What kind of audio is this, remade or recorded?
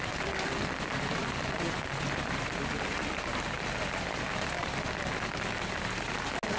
recorded